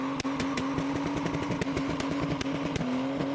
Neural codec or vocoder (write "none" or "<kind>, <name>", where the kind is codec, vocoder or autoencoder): none